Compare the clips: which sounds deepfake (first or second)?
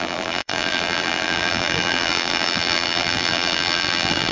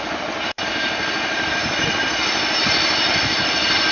first